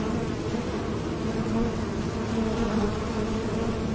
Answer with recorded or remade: recorded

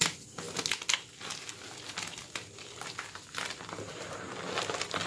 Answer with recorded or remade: recorded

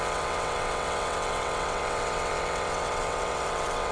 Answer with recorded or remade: remade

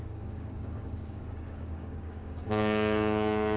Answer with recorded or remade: remade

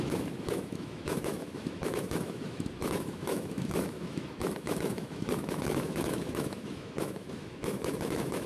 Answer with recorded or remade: remade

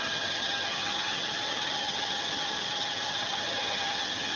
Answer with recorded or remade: remade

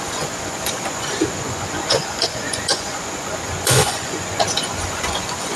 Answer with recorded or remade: remade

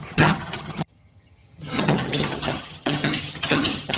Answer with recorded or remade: remade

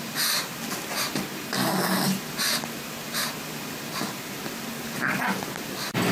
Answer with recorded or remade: recorded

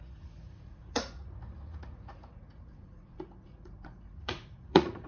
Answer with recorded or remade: remade